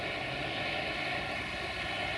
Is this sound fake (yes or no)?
no